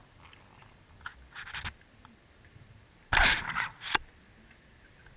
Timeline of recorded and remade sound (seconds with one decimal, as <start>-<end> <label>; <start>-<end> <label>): 0.0-5.2 recorded